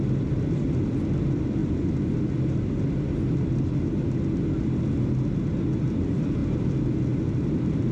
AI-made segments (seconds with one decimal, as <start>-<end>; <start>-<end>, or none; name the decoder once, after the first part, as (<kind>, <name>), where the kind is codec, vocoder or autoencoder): 0.0-1.6 (vocoder, BigVGAN v2); 5.8-6.4; 7.3-7.9